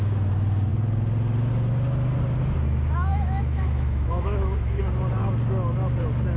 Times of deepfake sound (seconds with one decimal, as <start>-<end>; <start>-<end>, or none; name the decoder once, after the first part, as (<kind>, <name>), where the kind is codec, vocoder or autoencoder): 3.1-4.8 (autoencoder, DAC-VAE)